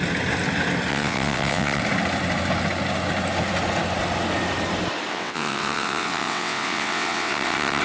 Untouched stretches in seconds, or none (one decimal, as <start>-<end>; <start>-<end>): 0.0-0.9; 1.8-5.1